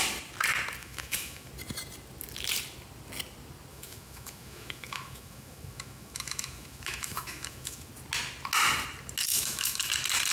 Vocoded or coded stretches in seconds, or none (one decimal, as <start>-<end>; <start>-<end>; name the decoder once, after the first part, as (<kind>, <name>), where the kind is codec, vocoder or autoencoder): 0.8-1.5 (autoencoder, DAC-VAE); 3.7-7.9; 9.3-9.9